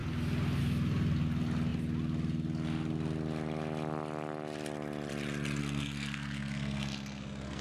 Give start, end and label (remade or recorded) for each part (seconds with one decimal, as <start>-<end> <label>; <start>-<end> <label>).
0.0-5.6 recorded; 5.6-7.6 remade